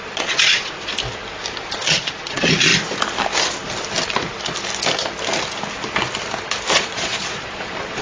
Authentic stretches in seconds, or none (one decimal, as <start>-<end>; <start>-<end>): 0.9-1.6; 2.7-6.7